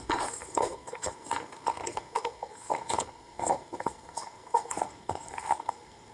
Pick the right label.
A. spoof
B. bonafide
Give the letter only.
A